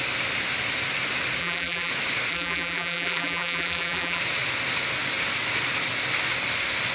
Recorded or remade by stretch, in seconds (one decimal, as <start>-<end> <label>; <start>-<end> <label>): 0.0-1.4 recorded; 1.4-1.9 remade; 1.9-2.3 recorded; 2.3-4.2 remade; 4.2-6.9 recorded